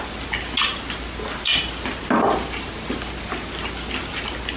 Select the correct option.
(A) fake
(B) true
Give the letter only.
B